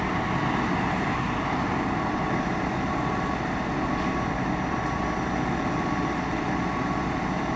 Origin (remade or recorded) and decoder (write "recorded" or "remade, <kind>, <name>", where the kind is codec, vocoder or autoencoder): recorded